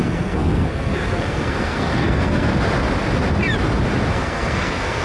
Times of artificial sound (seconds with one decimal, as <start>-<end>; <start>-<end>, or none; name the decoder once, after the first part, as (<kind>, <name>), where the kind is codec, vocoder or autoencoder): 0.0-2.5 (codec, SNAC); 4.1-5.0